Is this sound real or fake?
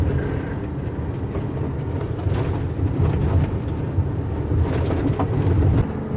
real